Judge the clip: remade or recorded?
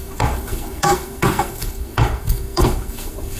remade